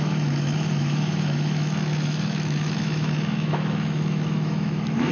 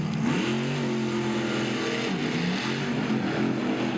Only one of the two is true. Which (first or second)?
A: second